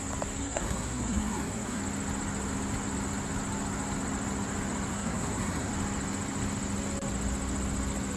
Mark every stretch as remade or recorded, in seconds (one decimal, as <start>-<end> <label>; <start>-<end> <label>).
0.0-0.4 recorded; 0.4-1.8 remade; 1.8-4.9 recorded; 4.9-5.7 remade; 5.7-8.2 recorded